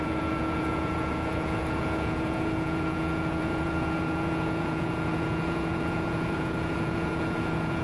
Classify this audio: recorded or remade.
remade